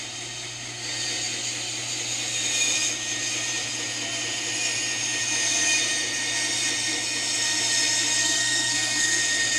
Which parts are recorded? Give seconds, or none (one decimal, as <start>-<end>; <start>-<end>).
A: 0.0-8.2; 9.2-9.6